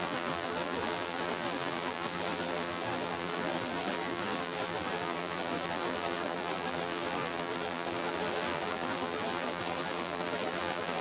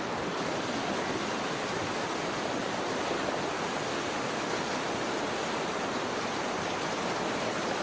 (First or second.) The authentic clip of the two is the second